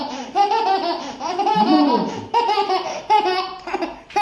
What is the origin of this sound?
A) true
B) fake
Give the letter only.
B